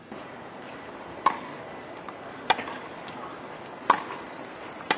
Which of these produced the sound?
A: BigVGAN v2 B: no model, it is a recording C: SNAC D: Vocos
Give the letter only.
B